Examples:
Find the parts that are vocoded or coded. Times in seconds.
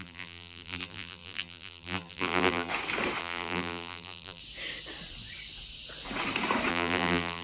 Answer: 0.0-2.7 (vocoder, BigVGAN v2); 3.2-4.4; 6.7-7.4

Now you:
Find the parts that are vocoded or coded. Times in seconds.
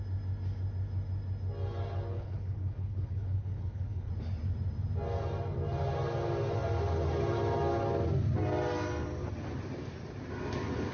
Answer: 2.1-4.1 (codec, HILCodec)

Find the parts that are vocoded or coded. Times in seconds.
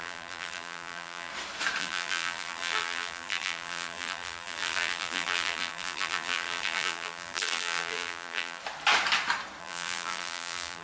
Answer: 0.0-1.3 (vocoder, BigVGAN v2); 1.8-8.6; 9.6-10.8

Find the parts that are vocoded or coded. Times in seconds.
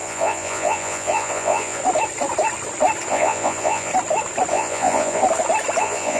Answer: 0.0-1.8 (vocoder, Vocos); 3.1-3.9; 4.5-5.2; 5.8-6.2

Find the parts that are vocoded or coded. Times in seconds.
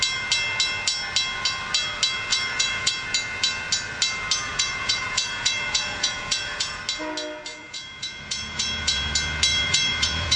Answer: 2.3-2.9 (vocoder, Vocos); 4.5-6.8; 7.5-9.1; 9.5-10.4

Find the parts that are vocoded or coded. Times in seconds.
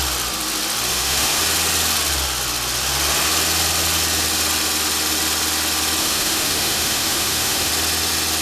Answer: 0.9-1.4 (autoencoder, DAC-VAE); 6.0-7.7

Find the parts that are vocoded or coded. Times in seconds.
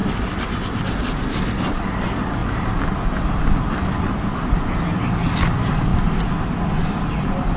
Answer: none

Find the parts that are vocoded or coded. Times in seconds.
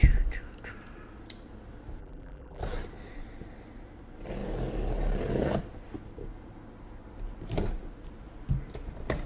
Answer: 2.0-2.6 (vocoder, BigVGAN v2)